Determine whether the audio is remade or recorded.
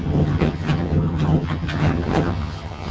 remade